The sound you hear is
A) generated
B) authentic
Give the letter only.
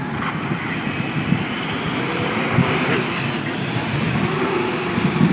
B